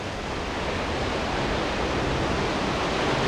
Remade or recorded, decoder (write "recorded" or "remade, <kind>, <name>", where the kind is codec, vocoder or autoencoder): recorded